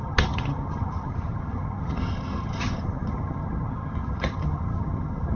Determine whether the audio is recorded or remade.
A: remade